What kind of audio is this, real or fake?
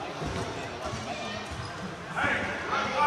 real